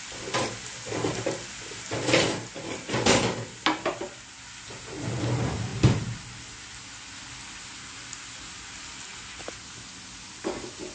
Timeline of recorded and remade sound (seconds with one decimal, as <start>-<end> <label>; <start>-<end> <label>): 0.0-10.9 recorded